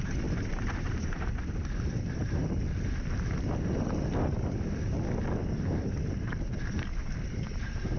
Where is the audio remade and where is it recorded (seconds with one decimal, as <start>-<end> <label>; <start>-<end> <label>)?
0.0-2.4 remade; 2.4-7.0 recorded; 7.0-8.0 remade